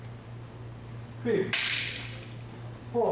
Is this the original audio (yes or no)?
yes